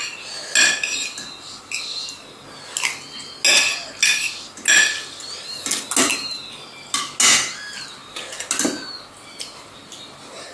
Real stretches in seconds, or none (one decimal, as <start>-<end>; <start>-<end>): 0.0-10.5